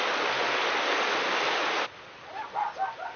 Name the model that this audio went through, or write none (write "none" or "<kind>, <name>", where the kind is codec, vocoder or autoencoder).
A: none